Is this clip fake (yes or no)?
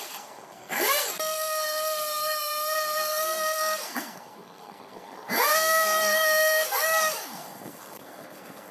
yes